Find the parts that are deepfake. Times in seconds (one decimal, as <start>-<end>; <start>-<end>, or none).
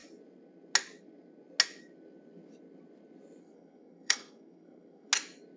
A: 3.4-5.1